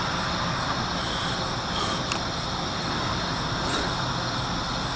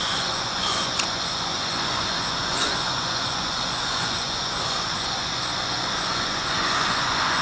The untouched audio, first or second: first